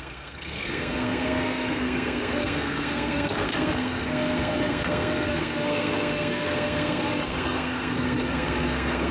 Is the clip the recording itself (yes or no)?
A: no